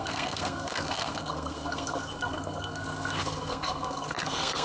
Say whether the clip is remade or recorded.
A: remade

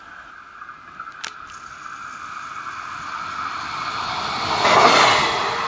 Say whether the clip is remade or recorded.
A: recorded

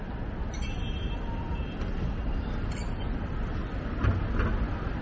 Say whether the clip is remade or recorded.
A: recorded